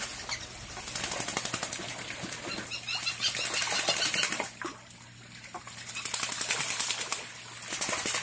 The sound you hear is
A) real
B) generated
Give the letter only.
A